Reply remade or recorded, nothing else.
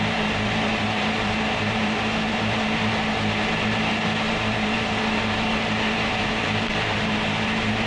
remade